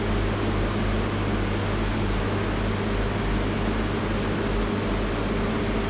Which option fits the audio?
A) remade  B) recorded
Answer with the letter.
B